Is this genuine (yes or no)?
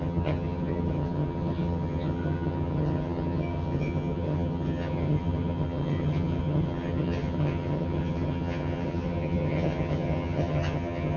no